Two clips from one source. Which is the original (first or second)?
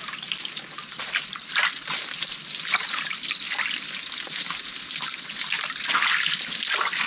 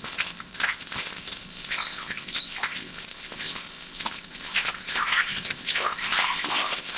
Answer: first